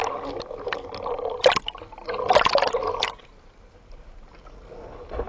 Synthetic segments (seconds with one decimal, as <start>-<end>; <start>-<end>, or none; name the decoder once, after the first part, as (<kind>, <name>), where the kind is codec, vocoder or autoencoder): none